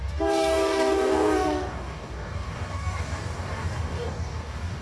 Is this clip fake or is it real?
fake